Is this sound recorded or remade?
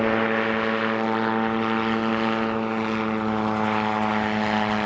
recorded